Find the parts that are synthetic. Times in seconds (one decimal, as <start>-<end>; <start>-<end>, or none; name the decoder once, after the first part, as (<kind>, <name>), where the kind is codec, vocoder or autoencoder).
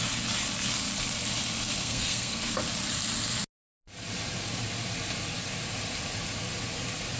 1.8-2.5 (codec, SNAC)